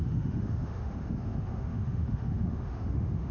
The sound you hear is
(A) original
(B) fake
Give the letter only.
B